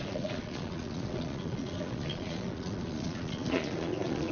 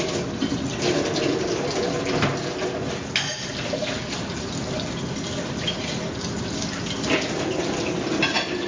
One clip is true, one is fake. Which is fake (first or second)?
first